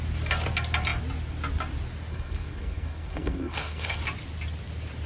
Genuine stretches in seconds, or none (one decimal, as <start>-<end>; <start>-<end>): 0.0-2.1; 4.0-5.1